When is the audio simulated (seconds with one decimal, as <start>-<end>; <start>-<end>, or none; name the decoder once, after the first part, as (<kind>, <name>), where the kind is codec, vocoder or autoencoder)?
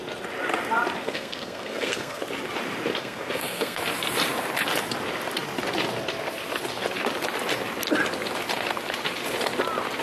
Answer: 1.0-2.2 (codec, SNAC); 3.0-3.8